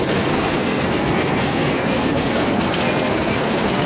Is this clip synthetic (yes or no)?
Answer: yes